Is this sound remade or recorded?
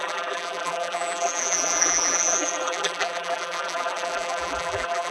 remade